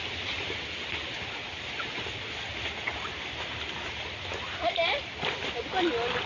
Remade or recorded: recorded